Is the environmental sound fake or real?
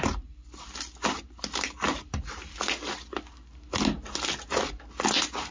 real